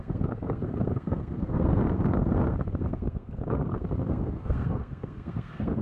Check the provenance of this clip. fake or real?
fake